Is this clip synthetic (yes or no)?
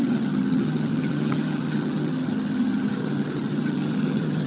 yes